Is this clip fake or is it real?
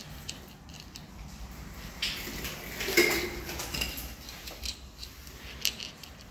real